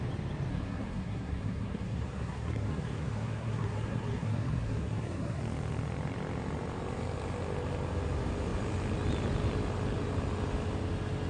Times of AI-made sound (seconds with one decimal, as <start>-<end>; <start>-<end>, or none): 0.5-5.4